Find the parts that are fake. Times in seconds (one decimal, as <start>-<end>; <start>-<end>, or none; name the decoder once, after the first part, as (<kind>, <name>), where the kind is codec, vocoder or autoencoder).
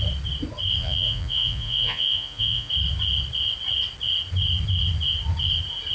0.8-2.7 (vocoder, Vocos)